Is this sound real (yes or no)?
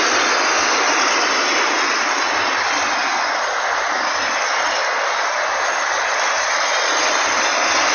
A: yes